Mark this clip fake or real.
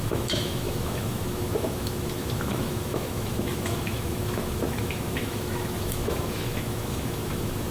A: fake